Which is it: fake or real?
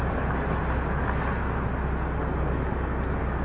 real